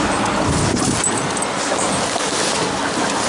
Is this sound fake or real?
real